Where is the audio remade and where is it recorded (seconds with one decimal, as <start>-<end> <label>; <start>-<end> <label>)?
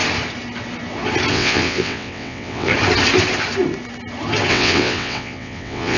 0.0-1.3 recorded; 1.3-2.7 remade; 2.7-4.5 recorded; 4.5-6.0 remade